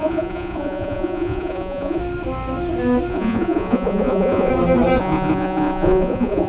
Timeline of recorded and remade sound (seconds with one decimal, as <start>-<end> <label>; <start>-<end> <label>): 0.0-2.0 remade; 2.0-3.1 recorded; 3.1-4.5 remade; 4.5-5.0 recorded; 5.0-6.5 remade